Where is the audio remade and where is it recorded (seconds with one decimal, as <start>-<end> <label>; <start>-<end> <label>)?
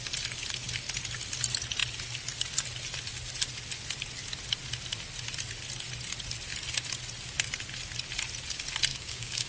0.0-8.9 recorded; 8.9-9.5 remade